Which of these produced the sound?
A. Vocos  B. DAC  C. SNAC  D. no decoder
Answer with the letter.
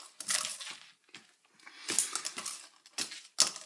D